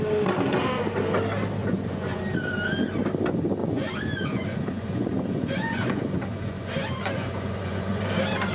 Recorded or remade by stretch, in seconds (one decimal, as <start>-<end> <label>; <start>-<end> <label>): 0.0-1.6 recorded; 1.6-2.2 remade; 2.2-3.6 recorded; 3.6-8.0 remade; 8.0-8.5 recorded

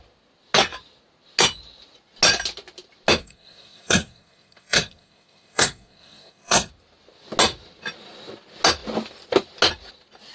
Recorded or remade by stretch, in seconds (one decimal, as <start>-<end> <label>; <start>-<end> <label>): 0.0-3.2 recorded; 3.2-6.7 remade; 6.7-10.3 recorded

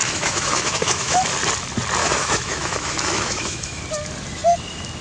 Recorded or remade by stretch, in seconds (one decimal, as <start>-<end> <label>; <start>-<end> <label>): 0.0-1.2 remade; 1.2-2.0 recorded; 2.0-3.8 remade; 3.8-5.0 recorded

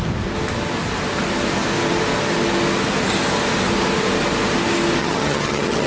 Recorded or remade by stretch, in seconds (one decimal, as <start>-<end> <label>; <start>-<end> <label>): 0.0-5.0 recorded; 5.0-5.9 remade

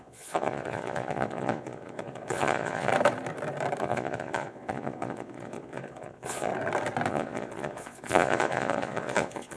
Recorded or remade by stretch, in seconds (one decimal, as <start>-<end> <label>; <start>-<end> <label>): 0.0-2.9 remade; 2.9-3.8 recorded; 3.8-6.5 remade; 6.5-7.1 recorded; 7.1-9.6 remade

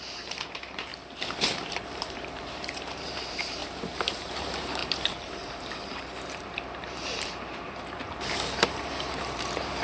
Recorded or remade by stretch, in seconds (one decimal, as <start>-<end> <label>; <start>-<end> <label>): 0.0-0.9 remade; 0.9-1.5 recorded; 1.5-3.6 remade; 3.6-4.2 recorded; 4.2-9.8 remade

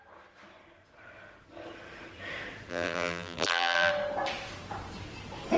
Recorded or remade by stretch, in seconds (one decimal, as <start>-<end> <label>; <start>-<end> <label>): 0.0-2.7 recorded; 2.7-3.9 remade; 3.9-5.6 recorded